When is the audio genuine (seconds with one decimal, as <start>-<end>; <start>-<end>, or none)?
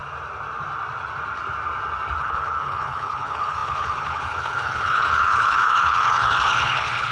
0.0-2.2